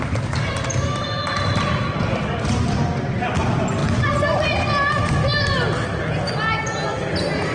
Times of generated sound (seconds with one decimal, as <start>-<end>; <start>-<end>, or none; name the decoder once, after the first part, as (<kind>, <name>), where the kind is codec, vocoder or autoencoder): none